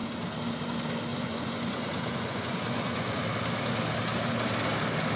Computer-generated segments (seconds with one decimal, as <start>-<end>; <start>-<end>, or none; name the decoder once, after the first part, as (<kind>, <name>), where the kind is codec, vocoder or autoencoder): 1.1-3.2 (vocoder, Vocos)

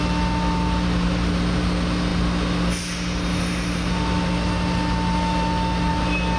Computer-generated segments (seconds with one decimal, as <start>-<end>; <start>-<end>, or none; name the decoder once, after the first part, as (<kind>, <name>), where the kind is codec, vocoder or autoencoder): none

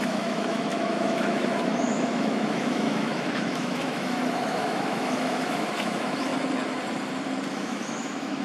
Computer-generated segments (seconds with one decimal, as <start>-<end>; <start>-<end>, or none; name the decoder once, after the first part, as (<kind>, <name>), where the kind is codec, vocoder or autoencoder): 0.0-6.3 (autoencoder, DAC-VAE); 7.5-8.4

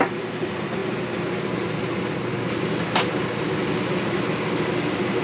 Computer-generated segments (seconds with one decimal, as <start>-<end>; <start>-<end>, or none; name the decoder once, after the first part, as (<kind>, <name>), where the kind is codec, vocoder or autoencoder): none

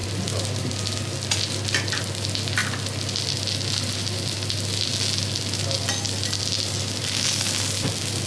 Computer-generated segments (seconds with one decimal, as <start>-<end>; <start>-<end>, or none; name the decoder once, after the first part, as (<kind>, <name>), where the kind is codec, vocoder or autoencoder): none

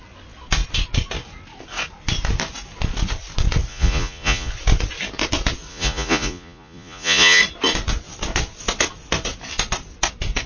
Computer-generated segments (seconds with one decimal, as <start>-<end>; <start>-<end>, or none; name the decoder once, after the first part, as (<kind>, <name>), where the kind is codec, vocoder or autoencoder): 3.7-4.5 (vocoder, Vocos); 5.7-7.4

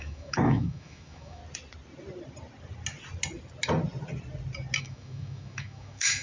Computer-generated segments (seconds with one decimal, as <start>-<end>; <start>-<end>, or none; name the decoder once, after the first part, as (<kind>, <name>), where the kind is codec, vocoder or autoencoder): 0.0-1.4 (autoencoder, DAC-VAE); 4.8-6.2